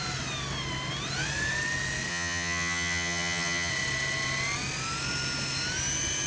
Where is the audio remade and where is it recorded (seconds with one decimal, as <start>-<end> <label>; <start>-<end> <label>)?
0.0-2.1 recorded; 2.1-3.7 remade; 3.7-6.3 recorded